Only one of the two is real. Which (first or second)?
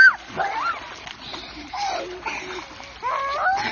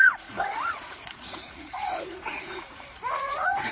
first